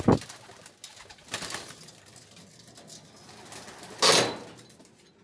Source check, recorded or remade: recorded